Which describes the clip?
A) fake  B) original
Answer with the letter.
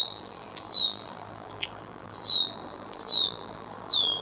A